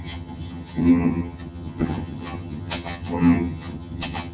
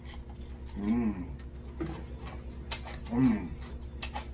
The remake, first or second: first